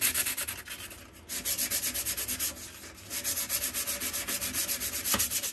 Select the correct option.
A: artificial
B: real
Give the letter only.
B